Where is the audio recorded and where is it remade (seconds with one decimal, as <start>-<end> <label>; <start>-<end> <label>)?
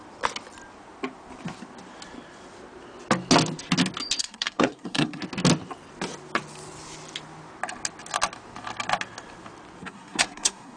0.0-4.2 recorded; 4.2-5.2 remade; 5.2-9.8 recorded; 9.8-10.8 remade